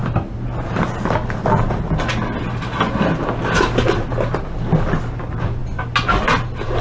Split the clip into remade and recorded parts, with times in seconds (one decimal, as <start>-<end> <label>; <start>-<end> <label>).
0.0-6.8 recorded